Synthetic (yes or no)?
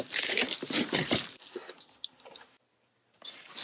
no